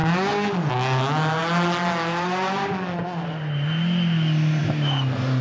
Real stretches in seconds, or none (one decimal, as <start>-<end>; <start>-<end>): 0.0-5.4